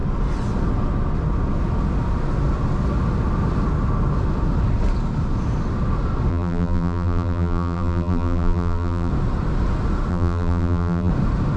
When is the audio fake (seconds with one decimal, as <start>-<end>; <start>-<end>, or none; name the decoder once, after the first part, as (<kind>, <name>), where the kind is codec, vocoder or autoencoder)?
6.3-9.1 (vocoder, BigVGAN v2); 10.1-11.1